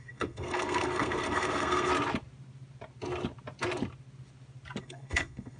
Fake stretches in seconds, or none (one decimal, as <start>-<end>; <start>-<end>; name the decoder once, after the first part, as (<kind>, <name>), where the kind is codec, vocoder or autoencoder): 0.0-1.9 (codec, SNAC); 4.8-5.6